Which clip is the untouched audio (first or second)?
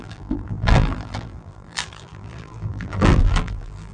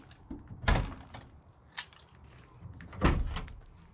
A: second